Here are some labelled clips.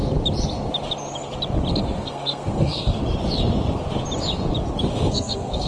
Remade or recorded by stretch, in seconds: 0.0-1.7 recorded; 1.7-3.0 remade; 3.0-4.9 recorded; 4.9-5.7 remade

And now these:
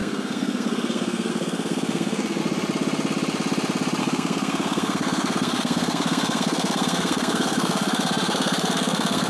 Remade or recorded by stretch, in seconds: 0.0-2.4 remade; 2.4-4.0 recorded; 4.0-9.3 remade

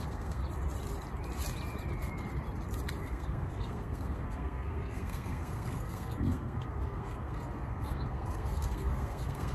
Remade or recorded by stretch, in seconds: 0.0-0.4 remade; 0.4-3.0 recorded; 3.0-9.5 remade